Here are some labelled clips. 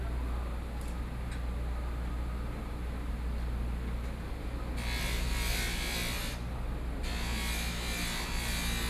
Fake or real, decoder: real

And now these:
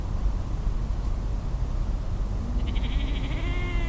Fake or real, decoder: real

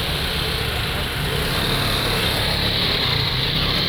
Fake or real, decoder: real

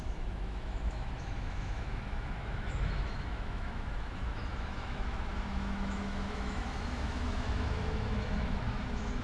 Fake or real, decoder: fake, autoencoder, DAC-VAE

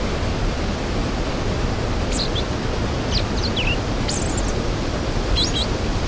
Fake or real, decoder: real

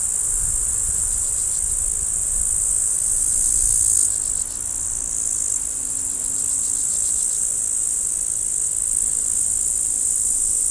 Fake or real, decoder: real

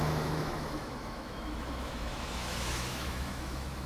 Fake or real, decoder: fake, autoencoder, DAC-VAE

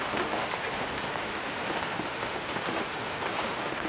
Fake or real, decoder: fake, autoencoder, DAC-VAE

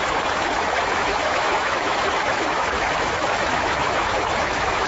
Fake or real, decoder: fake, autoencoder, DAC-VAE